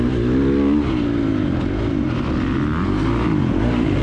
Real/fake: real